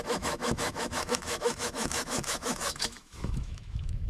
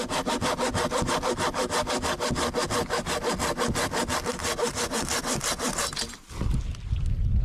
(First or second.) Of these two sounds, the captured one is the second